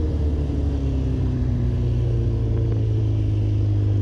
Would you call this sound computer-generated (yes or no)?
no